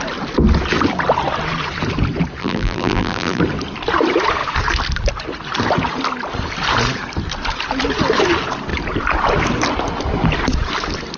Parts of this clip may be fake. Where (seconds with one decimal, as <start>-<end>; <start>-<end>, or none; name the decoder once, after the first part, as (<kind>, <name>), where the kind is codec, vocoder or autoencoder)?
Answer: 2.4-3.4 (vocoder, BigVGAN v2)